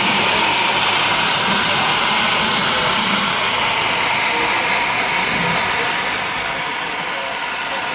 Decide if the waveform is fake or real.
real